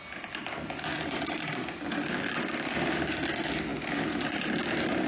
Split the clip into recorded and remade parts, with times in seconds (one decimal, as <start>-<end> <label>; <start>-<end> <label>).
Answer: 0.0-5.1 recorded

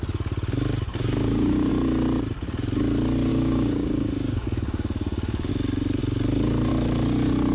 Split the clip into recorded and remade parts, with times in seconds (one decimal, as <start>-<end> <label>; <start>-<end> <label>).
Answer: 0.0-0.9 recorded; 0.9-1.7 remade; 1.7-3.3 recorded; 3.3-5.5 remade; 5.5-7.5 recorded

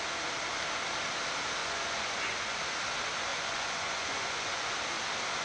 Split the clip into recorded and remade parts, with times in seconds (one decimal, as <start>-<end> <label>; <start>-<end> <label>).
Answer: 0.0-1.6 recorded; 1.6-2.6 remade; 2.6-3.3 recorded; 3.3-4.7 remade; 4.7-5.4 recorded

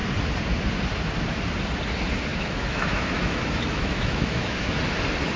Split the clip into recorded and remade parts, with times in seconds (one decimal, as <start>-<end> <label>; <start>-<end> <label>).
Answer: 0.0-2.3 recorded; 2.3-4.8 remade; 4.8-5.4 recorded

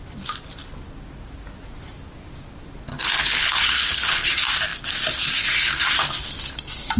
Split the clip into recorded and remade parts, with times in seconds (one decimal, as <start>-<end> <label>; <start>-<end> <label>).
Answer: 0.0-2.9 recorded; 2.9-4.3 remade; 4.3-7.0 recorded